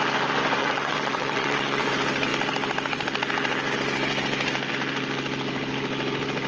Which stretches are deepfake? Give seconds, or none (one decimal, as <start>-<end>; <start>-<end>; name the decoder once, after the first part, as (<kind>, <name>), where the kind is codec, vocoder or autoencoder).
0.6-1.9 (vocoder, WaveNeXt)